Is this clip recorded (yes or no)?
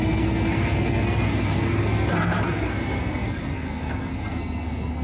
no